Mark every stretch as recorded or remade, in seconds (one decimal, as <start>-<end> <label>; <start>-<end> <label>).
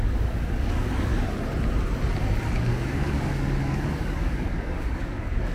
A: 0.0-1.1 remade; 1.1-2.4 recorded; 2.4-5.5 remade